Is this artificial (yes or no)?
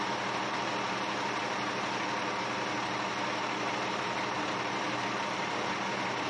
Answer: no